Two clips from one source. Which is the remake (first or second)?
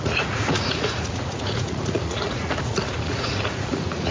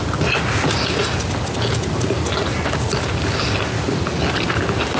first